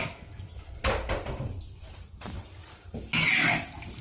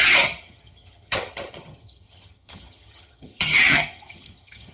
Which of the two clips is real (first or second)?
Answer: first